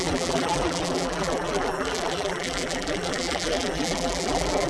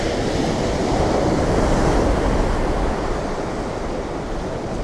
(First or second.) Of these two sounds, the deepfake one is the first